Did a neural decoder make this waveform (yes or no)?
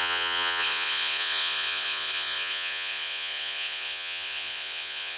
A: yes